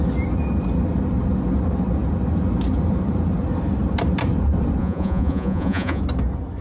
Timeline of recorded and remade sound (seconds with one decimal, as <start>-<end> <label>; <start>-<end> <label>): 0.0-4.8 recorded; 4.8-6.0 remade; 6.0-6.6 recorded